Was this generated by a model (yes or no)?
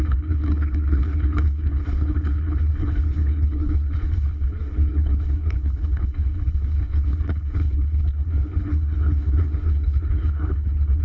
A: yes